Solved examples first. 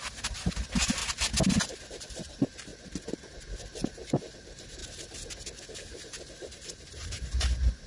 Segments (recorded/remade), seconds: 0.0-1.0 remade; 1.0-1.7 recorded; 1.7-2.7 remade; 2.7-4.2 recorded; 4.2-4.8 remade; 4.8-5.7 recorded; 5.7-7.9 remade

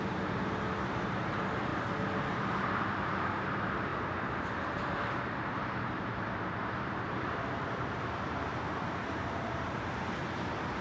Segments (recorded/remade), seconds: 0.0-1.7 remade; 1.7-2.3 recorded; 2.3-3.9 remade; 3.9-4.4 recorded; 4.4-10.8 remade

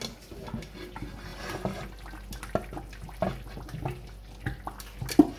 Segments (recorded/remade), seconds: 0.0-5.4 recorded